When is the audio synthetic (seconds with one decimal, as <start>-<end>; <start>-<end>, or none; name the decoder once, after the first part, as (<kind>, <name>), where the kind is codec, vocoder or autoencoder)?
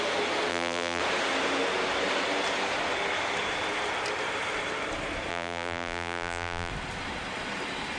0.5-1.0 (vocoder, BigVGAN v2); 5.3-6.7